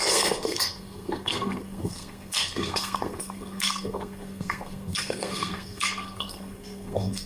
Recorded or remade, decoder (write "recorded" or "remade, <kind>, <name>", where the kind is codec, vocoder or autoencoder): remade, codec, SNAC